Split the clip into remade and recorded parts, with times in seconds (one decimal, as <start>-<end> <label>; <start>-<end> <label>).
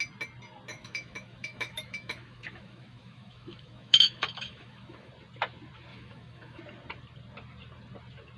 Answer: 0.0-0.7 recorded; 0.7-5.1 remade; 5.1-5.9 recorded; 5.9-6.6 remade; 6.6-8.4 recorded